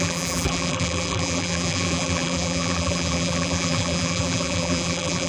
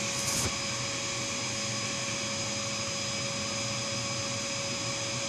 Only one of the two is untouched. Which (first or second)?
second